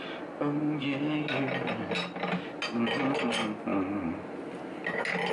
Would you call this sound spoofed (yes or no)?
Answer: no